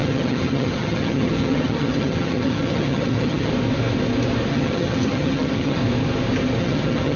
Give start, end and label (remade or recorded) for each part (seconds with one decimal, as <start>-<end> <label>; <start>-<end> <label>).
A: 0.0-3.5 remade; 3.5-4.5 recorded; 4.5-5.8 remade; 5.8-6.6 recorded; 6.6-7.2 remade